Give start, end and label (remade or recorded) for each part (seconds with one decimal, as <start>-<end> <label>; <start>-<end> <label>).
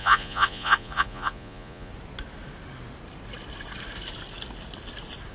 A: 0.0-1.9 remade; 1.9-5.3 recorded